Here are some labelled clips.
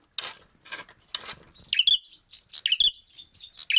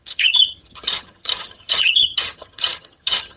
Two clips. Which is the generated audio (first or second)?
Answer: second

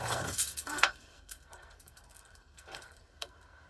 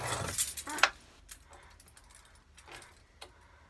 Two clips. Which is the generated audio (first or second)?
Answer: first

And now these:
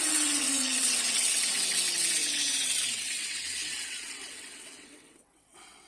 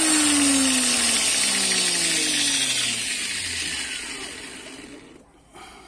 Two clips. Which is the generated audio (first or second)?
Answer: first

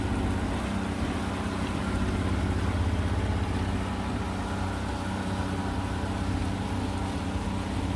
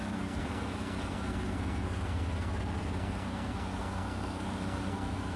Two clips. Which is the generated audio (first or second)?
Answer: second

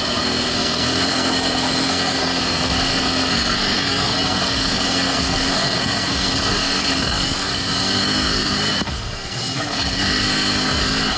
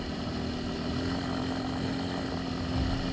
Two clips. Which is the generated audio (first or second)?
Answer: first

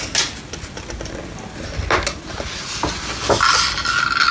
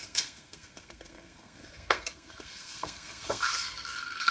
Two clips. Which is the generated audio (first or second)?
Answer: second